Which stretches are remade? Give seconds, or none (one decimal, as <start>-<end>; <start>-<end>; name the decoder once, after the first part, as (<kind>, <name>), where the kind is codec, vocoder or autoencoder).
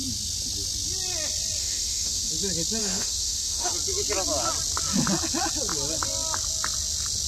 1.6-2.3 (autoencoder, DAC-VAE); 2.8-3.7